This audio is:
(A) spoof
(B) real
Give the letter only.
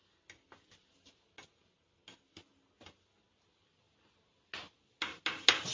B